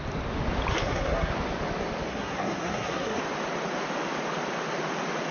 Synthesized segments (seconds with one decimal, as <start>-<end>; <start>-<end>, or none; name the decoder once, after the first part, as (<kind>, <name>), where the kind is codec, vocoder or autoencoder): 0.7-1.3 (codec, SNAC); 2.1-3.2